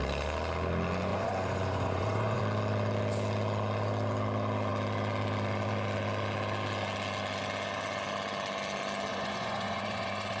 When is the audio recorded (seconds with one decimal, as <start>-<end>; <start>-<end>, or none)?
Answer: 0.0-1.1; 2.4-9.1